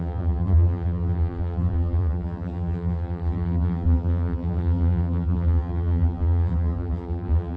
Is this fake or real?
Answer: fake